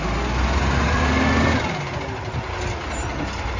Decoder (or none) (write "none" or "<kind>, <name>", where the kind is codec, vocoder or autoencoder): none